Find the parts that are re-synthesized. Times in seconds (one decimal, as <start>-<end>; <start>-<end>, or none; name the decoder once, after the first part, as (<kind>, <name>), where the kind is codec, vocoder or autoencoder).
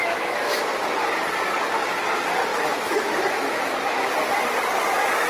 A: 0.0-0.6 (autoencoder, DAC-VAE); 2.5-4.1